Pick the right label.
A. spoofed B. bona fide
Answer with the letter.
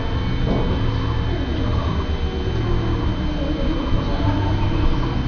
B